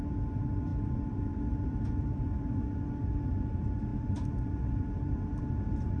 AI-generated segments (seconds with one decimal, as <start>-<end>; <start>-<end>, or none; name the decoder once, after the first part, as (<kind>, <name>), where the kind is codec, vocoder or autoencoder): 0.7-2.6 (vocoder, BigVGAN v2); 3.9-5.4